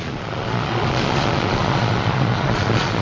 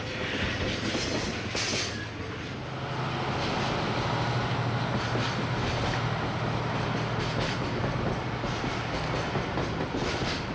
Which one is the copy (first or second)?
first